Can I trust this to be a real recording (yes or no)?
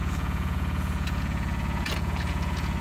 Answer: no